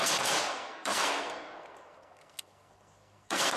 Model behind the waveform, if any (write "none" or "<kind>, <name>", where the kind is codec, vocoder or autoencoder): codec, SNAC